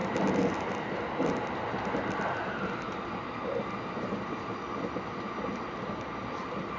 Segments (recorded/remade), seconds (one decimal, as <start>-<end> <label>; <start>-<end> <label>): 0.0-6.8 recorded